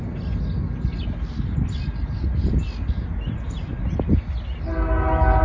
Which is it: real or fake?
real